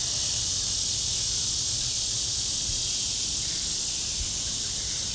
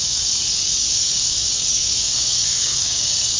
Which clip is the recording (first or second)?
first